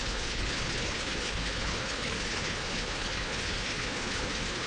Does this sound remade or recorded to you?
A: remade